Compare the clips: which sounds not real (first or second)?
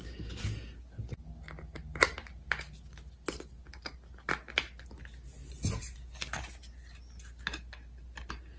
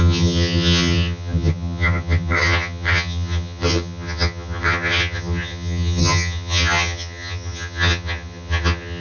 second